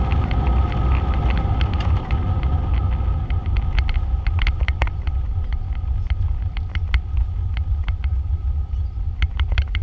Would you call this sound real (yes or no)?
yes